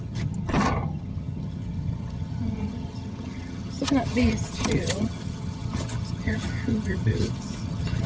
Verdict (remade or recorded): remade